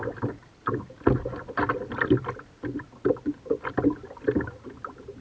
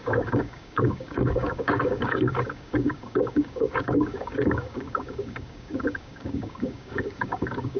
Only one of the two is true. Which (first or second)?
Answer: first